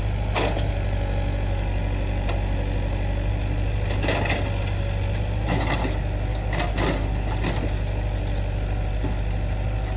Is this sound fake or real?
real